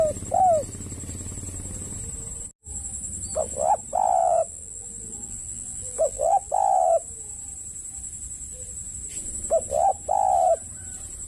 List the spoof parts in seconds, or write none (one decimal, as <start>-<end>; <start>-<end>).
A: 4.2-6.5